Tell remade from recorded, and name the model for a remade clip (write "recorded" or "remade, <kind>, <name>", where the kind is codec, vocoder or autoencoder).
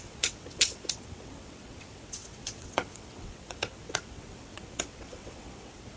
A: remade, vocoder, WaveNeXt